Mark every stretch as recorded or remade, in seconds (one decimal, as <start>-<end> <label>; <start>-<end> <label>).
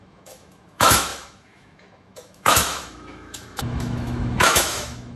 0.0-5.2 remade